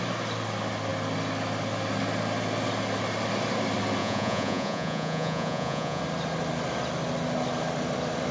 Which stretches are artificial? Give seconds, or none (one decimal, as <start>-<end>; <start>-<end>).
4.0-6.0